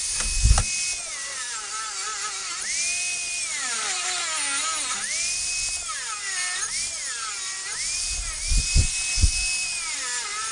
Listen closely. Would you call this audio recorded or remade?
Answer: recorded